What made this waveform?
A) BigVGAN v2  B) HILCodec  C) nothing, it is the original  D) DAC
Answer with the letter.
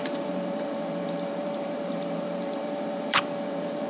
A